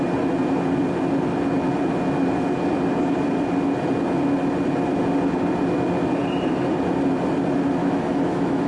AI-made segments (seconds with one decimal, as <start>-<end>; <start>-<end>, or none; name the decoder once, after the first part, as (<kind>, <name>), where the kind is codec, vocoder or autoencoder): 7.8-8.7 (autoencoder, DAC-VAE)